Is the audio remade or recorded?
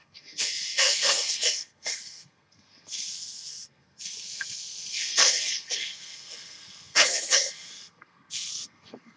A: remade